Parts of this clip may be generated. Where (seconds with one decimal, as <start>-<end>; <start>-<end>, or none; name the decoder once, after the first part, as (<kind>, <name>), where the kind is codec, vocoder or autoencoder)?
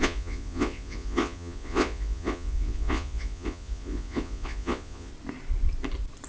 0.0-5.1 (vocoder, Vocos)